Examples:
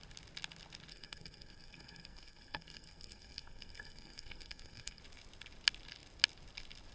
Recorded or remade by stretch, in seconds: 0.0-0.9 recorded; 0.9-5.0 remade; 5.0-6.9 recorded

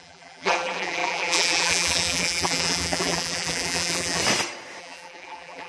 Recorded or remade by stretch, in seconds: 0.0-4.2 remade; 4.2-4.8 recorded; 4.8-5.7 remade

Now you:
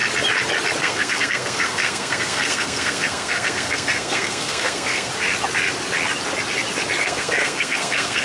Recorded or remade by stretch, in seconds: 0.0-0.8 recorded; 0.8-5.1 remade; 5.1-7.0 recorded; 7.0-8.2 remade

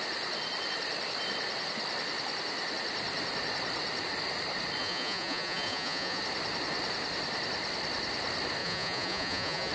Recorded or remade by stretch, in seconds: 0.0-4.8 recorded; 4.8-6.2 remade; 6.2-8.6 recorded; 8.6-9.7 remade

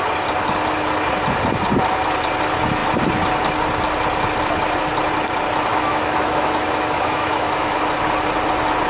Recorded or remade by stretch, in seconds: 0.0-5.7 recorded; 5.7-7.8 remade; 7.8-8.9 recorded

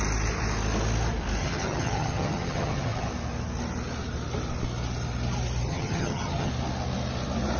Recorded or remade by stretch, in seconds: 0.0-1.4 recorded; 1.4-3.1 remade; 3.1-5.7 recorded; 5.7-6.5 remade; 6.5-7.6 recorded

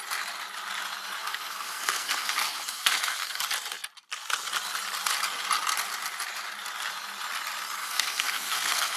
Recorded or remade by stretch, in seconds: 0.0-1.2 recorded; 1.2-3.4 remade; 3.4-7.8 recorded; 7.8-9.0 remade

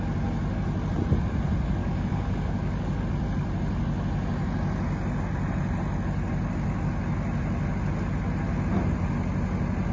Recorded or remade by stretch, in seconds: 0.0-1.8 recorded; 1.8-3.0 remade; 3.0-9.9 recorded